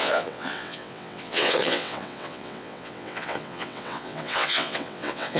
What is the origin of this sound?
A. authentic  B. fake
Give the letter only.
B